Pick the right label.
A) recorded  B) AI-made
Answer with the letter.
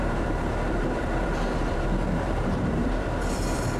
B